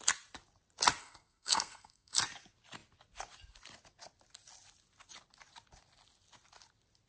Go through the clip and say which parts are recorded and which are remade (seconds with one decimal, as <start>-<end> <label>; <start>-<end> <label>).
0.0-1.0 recorded; 1.0-2.2 remade; 2.2-7.1 recorded